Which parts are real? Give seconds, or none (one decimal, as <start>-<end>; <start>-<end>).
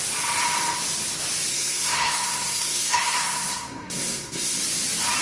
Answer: 0.0-1.5; 4.6-5.2